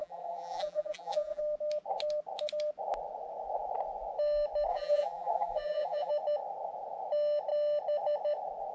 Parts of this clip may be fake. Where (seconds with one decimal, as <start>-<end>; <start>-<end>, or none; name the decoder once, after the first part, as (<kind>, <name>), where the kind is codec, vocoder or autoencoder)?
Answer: 0.0-1.4 (vocoder, BigVGAN v2); 4.7-6.1